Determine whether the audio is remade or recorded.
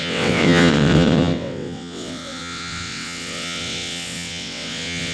remade